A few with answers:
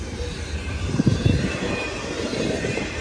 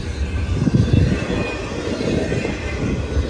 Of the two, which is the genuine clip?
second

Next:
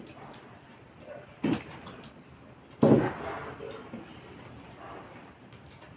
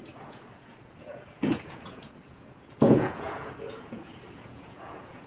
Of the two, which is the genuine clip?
first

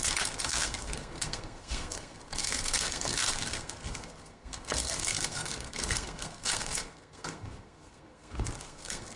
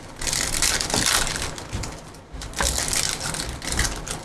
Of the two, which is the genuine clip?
second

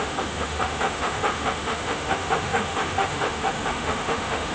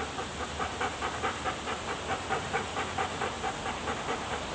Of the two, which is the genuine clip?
second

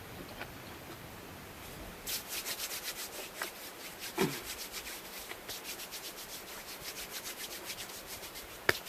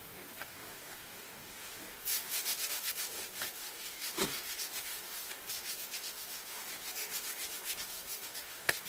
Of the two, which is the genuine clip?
first